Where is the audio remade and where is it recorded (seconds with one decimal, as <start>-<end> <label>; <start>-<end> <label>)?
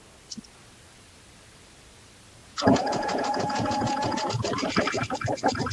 0.0-2.4 recorded; 2.4-4.3 remade; 4.3-5.7 recorded